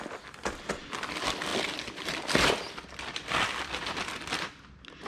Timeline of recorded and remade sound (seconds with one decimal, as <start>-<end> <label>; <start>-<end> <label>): 0.0-1.5 recorded; 1.5-4.6 remade; 4.6-5.1 recorded